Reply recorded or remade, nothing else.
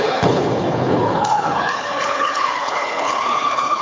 remade